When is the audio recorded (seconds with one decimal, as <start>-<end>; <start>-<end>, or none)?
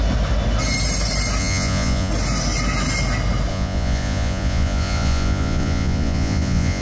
0.0-1.4; 2.1-3.5